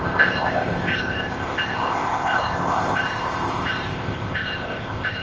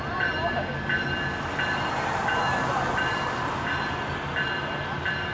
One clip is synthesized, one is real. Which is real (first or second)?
second